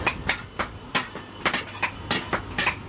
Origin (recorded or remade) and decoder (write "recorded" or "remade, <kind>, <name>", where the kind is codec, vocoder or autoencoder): recorded